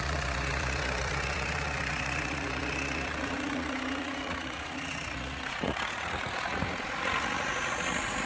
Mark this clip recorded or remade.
remade